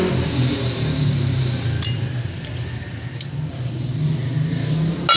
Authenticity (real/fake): real